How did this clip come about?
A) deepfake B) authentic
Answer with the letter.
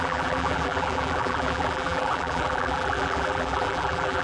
A